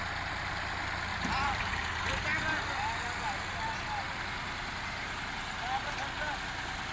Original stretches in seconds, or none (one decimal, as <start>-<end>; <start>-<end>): 0.0-1.1; 1.8-6.9